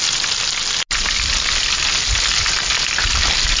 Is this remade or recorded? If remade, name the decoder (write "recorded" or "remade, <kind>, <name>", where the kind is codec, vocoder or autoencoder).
recorded